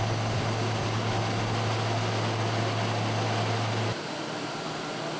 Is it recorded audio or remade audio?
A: recorded